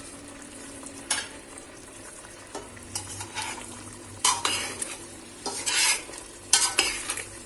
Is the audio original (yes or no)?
no